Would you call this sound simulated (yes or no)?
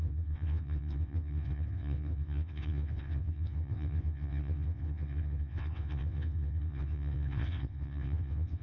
yes